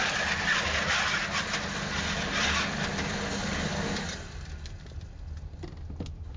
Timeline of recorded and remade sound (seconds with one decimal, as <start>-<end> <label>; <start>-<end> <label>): 0.0-6.4 recorded